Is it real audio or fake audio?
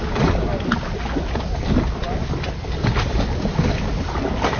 real